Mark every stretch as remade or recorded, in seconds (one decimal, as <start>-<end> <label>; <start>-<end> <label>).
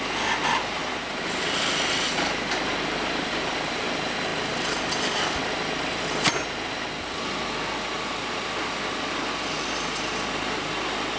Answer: 0.0-11.2 recorded